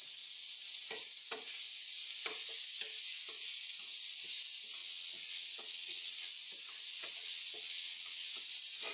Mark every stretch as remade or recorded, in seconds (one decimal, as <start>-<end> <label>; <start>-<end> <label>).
0.0-4.8 recorded; 4.8-6.3 remade; 6.3-6.9 recorded; 6.9-8.3 remade; 8.3-8.9 recorded